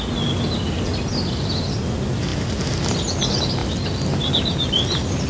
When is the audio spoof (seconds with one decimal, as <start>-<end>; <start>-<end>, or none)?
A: none